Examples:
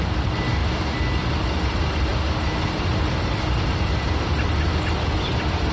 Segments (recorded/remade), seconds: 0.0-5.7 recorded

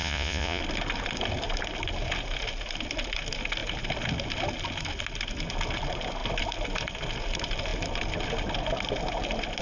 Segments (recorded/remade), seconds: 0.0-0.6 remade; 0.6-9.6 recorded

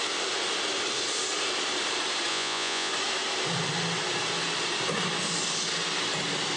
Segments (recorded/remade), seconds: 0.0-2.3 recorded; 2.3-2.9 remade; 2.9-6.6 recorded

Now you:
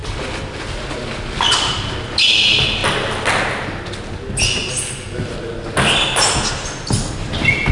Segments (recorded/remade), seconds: 0.0-7.7 recorded

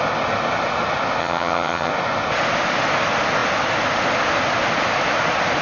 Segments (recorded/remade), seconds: 0.0-1.2 recorded; 1.2-1.9 remade; 1.9-5.6 recorded

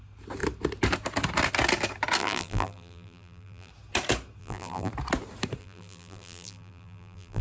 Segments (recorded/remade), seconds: 0.0-2.2 recorded; 2.2-3.7 remade; 3.7-4.4 recorded; 4.4-4.9 remade; 4.9-5.6 recorded; 5.6-7.4 remade

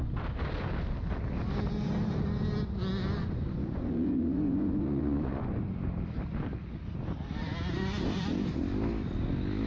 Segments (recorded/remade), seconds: 0.0-3.2 recorded; 3.2-5.7 remade; 5.7-9.7 recorded